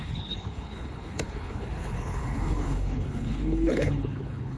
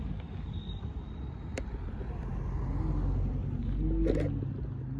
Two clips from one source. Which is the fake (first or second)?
first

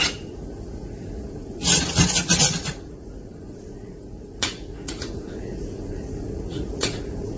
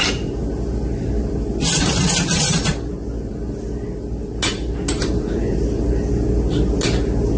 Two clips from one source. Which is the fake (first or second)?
first